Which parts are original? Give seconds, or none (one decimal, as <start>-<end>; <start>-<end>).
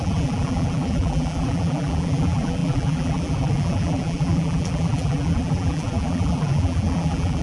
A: none